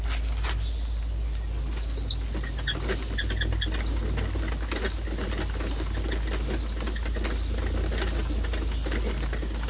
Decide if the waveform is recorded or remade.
recorded